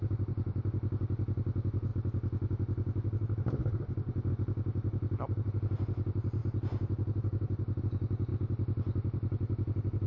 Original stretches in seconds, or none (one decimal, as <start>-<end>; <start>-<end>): 1.9-4.3